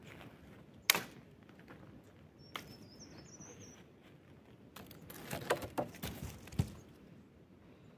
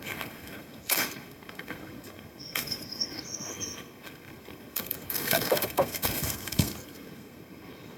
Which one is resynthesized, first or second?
second